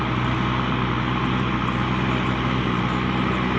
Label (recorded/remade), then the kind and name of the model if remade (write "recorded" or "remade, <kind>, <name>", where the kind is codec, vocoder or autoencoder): recorded